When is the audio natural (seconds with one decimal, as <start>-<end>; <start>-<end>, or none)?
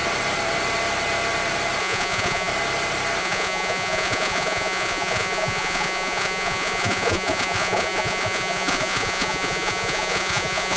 0.0-1.8; 2.5-3.2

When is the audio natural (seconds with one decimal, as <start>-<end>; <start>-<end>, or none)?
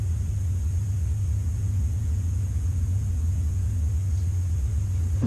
0.0-1.4; 3.8-5.3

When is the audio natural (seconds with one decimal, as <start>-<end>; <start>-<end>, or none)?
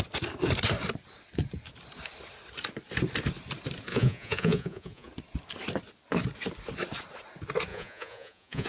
0.0-3.9; 5.1-7.7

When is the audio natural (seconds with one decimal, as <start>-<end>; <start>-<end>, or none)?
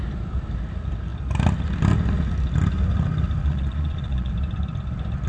0.0-3.4; 4.3-5.3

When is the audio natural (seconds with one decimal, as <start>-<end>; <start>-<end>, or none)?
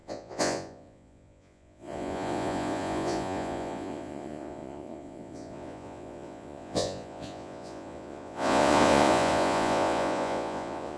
none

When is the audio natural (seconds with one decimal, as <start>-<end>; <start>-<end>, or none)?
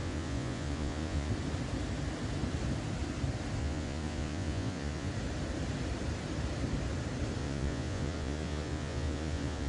1.3-3.6; 5.1-7.4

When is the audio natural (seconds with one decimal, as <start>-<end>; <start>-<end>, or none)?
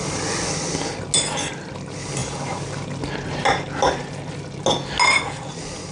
0.0-5.9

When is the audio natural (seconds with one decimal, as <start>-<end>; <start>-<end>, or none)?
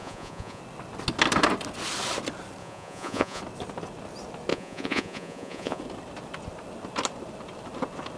0.6-2.6; 3.4-4.5; 5.8-8.2